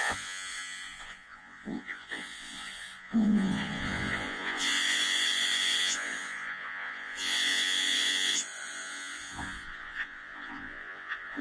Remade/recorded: remade